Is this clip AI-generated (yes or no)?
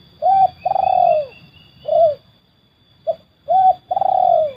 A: yes